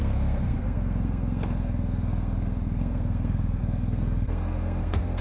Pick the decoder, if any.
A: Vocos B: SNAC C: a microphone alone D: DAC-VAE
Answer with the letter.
B